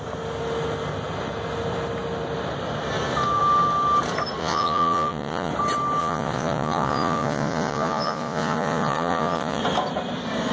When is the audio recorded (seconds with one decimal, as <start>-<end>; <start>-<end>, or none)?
0.0-4.4; 5.5-6.0; 9.6-10.5